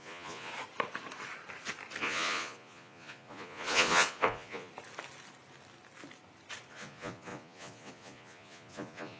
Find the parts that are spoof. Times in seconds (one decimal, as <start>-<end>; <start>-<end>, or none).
0.0-0.5; 2.0-4.7; 6.7-9.2